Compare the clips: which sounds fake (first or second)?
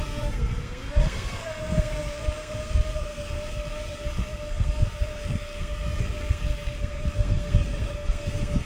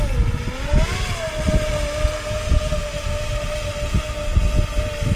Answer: first